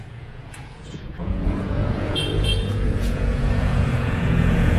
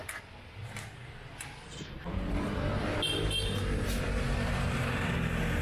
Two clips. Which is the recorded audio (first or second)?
second